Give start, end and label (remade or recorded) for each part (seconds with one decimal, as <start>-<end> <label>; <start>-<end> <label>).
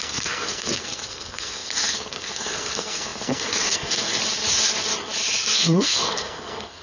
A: 0.0-4.1 remade; 4.1-5.4 recorded; 5.4-6.8 remade